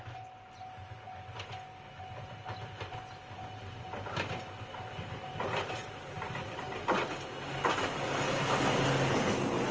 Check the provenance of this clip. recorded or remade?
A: recorded